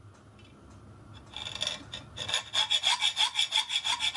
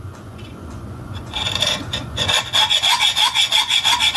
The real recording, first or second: first